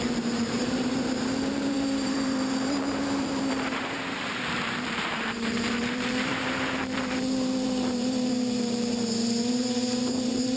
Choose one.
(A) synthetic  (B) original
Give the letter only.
A